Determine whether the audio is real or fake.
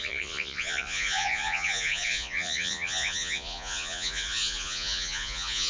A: fake